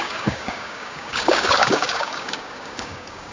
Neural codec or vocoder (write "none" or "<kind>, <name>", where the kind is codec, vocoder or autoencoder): codec, DAC